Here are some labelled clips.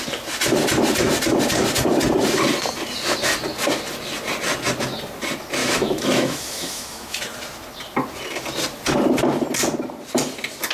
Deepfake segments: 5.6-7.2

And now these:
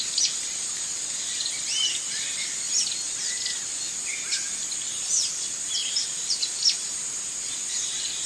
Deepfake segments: 5.8-7.0